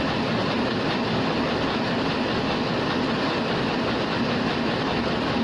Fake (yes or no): no